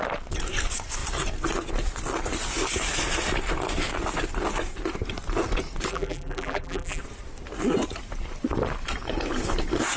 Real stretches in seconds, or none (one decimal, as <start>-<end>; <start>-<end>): 0.0-5.9; 7.0-10.0